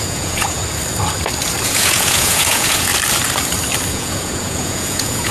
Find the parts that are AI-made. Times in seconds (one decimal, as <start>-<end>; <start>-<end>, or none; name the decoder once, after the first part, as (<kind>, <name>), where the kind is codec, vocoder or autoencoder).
0.0-0.6 (vocoder, Vocos); 1.6-2.9; 3.9-5.3